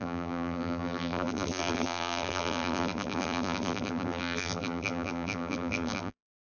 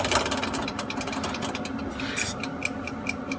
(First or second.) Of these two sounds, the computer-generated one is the first